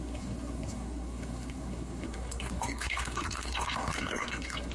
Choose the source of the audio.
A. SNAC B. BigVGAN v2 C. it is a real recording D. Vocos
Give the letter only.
A